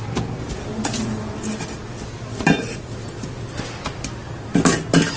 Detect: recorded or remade recorded